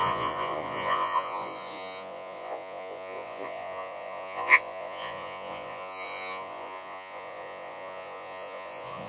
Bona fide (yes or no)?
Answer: no